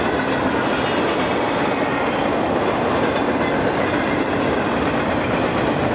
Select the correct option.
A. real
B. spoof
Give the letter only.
A